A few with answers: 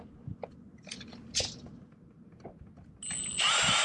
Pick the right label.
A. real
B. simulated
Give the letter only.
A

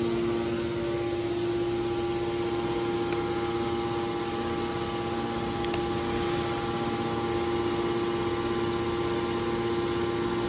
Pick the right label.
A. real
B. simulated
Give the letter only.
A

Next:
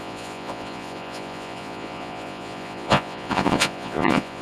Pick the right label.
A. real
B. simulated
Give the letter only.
B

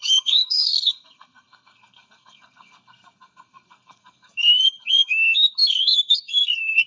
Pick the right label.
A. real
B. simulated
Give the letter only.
B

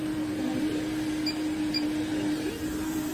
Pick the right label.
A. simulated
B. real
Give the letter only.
B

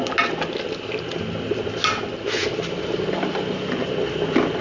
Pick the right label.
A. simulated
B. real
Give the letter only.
B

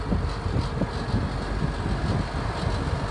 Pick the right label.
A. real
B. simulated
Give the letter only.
A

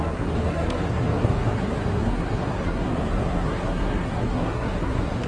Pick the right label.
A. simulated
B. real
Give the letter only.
A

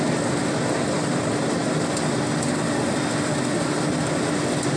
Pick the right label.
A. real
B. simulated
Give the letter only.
A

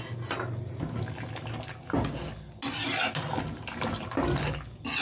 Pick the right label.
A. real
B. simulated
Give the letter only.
A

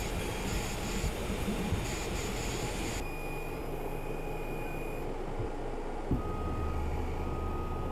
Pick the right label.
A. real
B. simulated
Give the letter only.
A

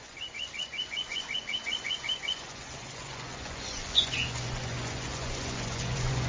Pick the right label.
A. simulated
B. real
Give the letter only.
A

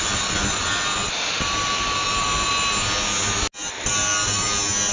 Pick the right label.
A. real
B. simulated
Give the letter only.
A